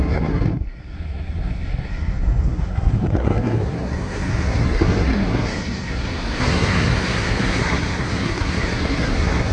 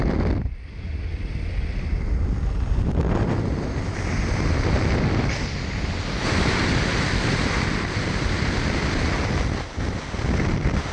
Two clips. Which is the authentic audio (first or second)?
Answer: second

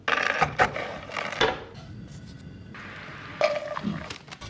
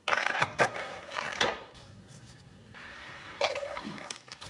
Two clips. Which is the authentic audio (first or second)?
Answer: first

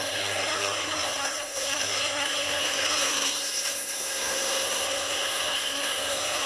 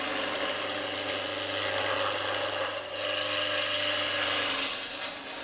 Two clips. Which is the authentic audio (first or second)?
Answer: second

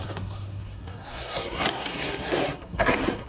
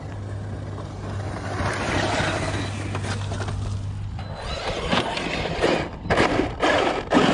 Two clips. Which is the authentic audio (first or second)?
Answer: second